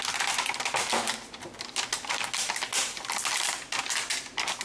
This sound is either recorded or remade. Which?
recorded